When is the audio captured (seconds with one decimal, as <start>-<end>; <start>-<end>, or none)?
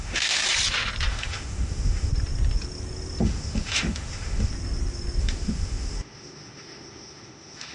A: 0.4-1.1; 2.1-3.2; 4.5-5.2